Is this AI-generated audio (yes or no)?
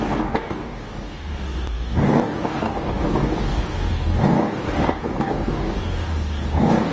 yes